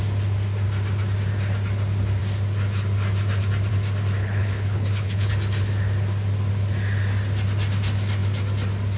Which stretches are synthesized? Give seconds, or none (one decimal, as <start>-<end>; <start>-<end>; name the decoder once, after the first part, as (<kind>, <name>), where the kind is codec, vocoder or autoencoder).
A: 4.2-5.3 (codec, HILCodec)